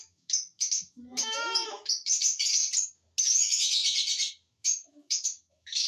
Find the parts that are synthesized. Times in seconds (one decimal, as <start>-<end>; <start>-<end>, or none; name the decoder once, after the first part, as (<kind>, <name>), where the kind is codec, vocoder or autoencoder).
0.0-2.6 (autoencoder, DAC-VAE); 3.2-3.8; 4.5-5.9